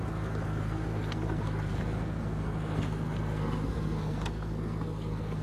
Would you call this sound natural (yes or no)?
no